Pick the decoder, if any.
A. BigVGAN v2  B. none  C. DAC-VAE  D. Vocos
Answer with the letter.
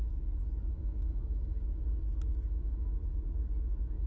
B